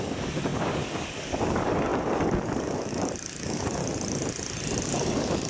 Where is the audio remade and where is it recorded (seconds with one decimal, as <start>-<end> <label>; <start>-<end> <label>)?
0.0-3.8 remade; 3.8-4.8 recorded; 4.8-5.5 remade